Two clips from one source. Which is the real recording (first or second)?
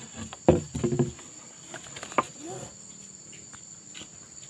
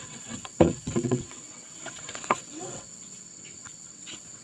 first